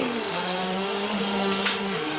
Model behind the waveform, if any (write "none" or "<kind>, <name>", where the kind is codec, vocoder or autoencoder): autoencoder, DAC-VAE